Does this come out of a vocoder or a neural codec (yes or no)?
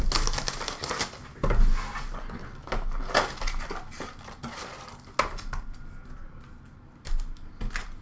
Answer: no